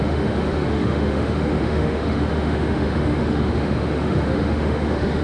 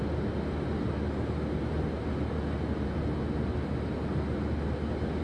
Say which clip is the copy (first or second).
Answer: first